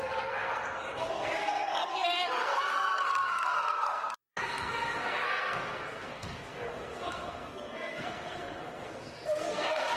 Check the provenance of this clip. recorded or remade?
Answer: remade